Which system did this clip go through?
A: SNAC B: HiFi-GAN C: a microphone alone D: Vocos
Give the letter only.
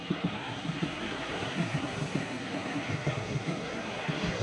A